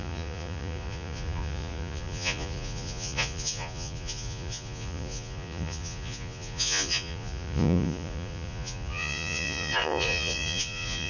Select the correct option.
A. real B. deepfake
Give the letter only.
B